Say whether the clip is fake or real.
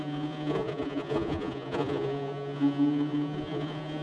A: fake